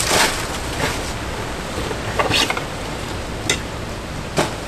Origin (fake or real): real